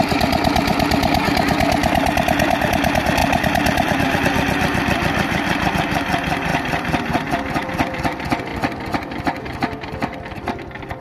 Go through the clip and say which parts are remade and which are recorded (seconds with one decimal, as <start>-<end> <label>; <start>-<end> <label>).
0.0-8.5 remade; 8.5-11.0 recorded